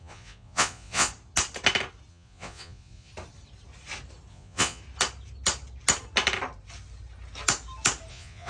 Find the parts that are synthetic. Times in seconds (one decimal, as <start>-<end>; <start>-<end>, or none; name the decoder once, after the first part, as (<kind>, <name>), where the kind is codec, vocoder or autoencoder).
0.0-1.1 (vocoder, Vocos); 2.1-3.1; 4.3-4.8; 8.1-8.5